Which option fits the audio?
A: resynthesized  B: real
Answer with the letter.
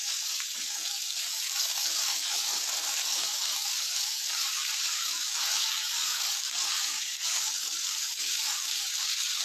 A